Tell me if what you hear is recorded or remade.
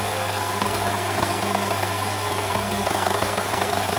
remade